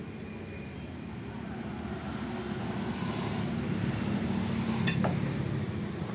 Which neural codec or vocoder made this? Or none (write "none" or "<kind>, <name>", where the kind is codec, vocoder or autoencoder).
none